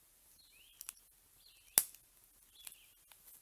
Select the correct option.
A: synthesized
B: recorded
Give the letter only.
B